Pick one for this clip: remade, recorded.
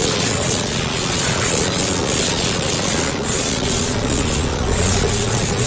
remade